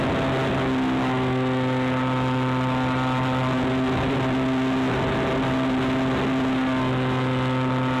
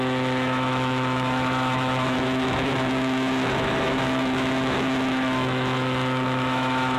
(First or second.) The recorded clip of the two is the first